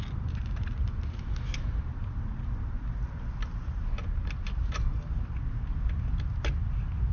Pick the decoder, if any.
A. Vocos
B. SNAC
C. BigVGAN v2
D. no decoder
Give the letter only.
D